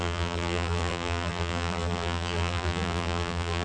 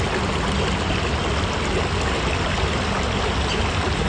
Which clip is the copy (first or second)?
first